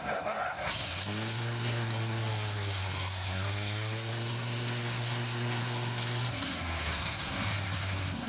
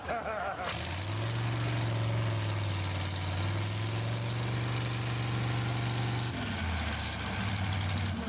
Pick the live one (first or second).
second